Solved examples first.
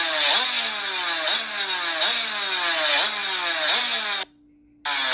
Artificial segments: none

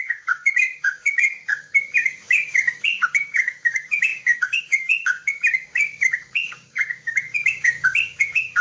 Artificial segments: 0.0-8.6 (codec, DAC)

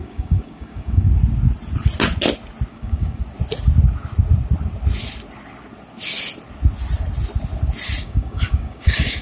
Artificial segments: 0.0-1.1 (codec, DAC); 2.7-3.2; 8.0-9.2

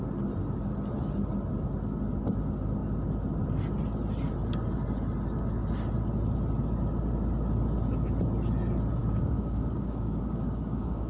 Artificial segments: 9.0-11.1 (codec, DAC)

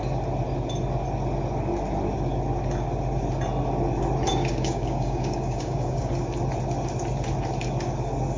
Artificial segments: 4.3-6.1 (codec, DAC)